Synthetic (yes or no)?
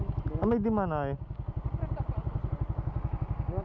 no